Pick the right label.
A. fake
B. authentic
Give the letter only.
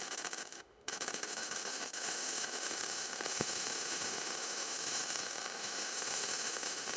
A